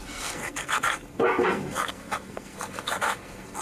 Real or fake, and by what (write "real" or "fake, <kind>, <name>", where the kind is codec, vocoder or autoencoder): fake, codec, SNAC